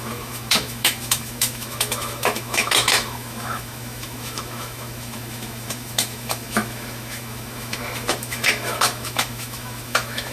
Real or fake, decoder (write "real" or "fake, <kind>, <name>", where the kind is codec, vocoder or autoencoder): fake, autoencoder, DAC-VAE